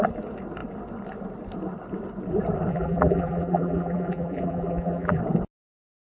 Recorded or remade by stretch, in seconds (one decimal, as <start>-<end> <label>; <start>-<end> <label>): 0.0-2.7 recorded; 2.7-5.2 remade; 5.2-6.0 recorded